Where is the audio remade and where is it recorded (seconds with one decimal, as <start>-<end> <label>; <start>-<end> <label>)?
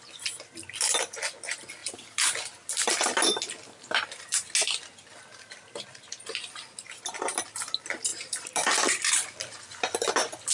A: 0.0-10.5 recorded